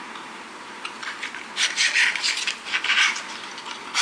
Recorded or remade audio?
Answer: recorded